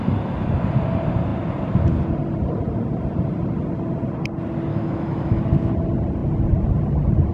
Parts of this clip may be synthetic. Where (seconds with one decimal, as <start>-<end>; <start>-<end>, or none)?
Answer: 4.7-5.4